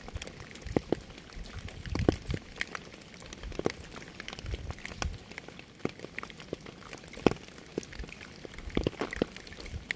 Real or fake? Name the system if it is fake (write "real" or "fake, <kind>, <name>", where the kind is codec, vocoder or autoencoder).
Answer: real